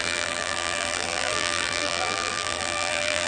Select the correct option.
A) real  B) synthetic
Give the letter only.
B